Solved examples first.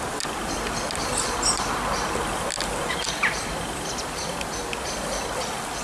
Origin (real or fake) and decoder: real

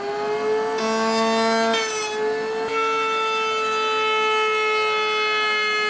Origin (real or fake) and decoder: real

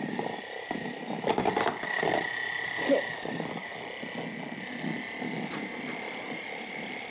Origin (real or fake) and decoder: real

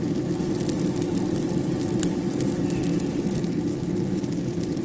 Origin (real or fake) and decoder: real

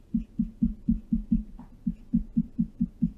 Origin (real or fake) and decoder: fake, vocoder, Vocos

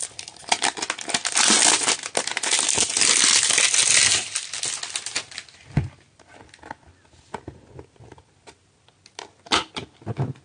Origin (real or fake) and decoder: real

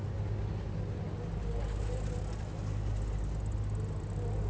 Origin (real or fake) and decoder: real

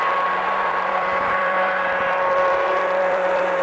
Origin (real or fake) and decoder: fake, vocoder, BigVGAN v2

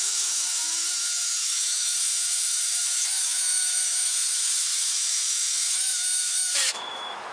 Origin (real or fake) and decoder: fake, autoencoder, DAC-VAE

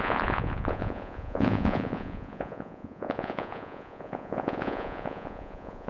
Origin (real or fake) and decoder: fake, vocoder, Vocos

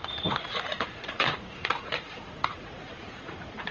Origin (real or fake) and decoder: fake, vocoder, Vocos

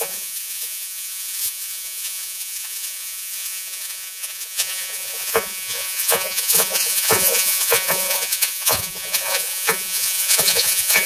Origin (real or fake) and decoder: fake, vocoder, Vocos